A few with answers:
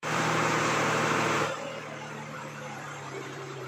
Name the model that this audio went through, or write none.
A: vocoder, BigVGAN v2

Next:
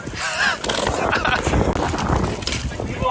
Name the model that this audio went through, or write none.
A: none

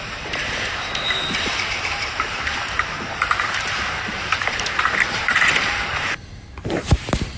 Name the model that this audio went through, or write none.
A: vocoder, BigVGAN v2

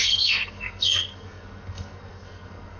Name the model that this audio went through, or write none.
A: codec, SNAC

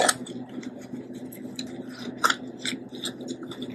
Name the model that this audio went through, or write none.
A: none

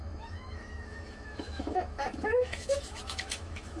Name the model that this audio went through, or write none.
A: autoencoder, DAC-VAE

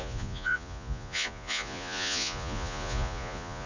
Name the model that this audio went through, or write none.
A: vocoder, Vocos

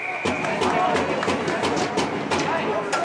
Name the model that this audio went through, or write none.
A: none